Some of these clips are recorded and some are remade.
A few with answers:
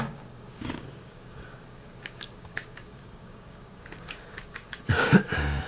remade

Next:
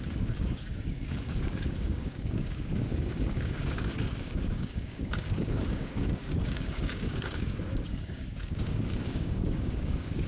remade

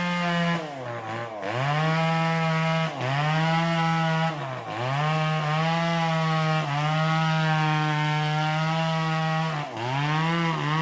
recorded